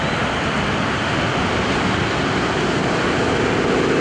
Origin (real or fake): real